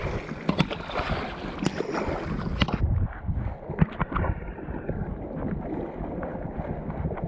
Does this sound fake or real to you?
real